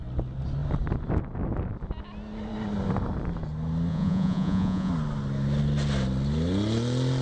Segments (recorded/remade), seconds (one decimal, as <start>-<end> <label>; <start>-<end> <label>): 0.0-3.9 recorded; 3.9-4.9 remade; 4.9-7.2 recorded